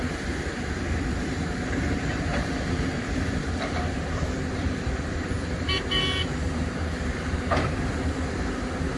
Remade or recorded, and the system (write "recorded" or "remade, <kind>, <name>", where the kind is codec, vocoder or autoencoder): remade, vocoder, BigVGAN v2